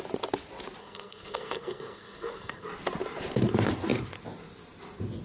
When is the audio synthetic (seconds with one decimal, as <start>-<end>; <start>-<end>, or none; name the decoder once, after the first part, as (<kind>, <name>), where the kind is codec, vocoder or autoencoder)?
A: 0.8-2.7 (codec, SNAC)